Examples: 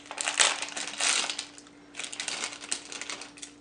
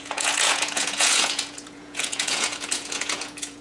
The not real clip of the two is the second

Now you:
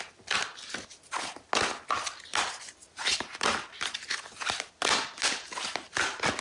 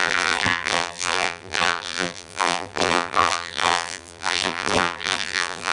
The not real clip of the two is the second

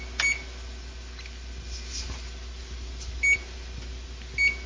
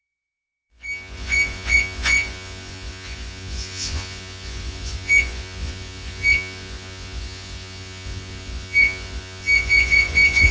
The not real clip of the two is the second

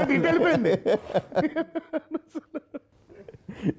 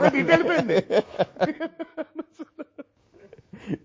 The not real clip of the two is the second